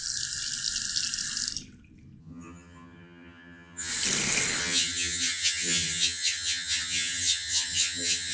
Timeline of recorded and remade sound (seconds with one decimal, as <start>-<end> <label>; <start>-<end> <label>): 0.0-2.2 recorded; 2.2-3.9 remade; 3.9-4.6 recorded; 4.6-8.3 remade